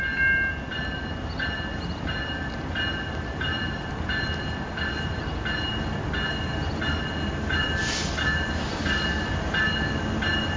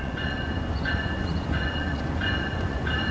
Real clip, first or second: first